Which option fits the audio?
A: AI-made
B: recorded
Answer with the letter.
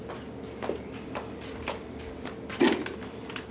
A